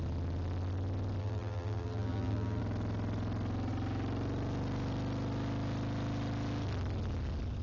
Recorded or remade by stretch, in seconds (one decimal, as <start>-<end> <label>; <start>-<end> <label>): 0.0-1.2 recorded; 1.2-2.6 remade; 2.6-7.6 recorded